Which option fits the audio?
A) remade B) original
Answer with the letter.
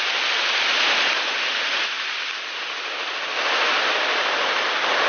B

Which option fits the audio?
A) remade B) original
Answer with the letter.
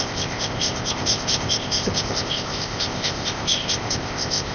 A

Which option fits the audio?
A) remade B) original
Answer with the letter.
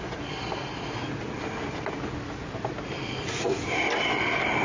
B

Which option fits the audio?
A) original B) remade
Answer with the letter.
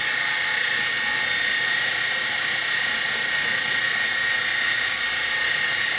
A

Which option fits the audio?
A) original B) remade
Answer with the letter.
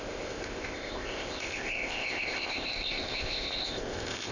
B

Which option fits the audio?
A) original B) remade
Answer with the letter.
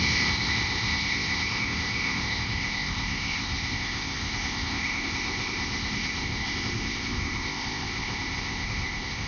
B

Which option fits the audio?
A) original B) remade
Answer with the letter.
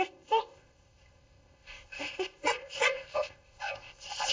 B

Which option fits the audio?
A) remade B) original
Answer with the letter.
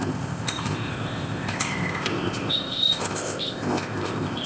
A